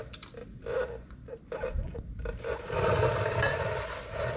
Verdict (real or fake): fake